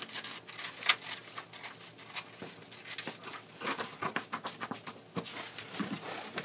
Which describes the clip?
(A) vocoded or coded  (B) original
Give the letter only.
B